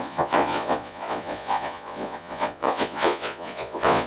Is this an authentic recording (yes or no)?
no